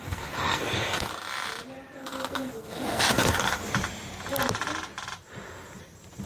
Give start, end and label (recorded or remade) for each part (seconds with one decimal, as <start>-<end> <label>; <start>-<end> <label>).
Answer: 0.0-1.1 remade; 1.1-2.0 recorded; 2.0-3.6 remade; 3.6-6.3 recorded